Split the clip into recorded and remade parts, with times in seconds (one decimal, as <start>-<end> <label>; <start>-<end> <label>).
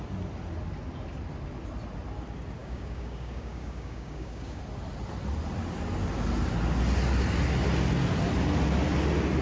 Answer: 0.0-2.6 recorded; 2.6-4.6 remade; 4.6-9.4 recorded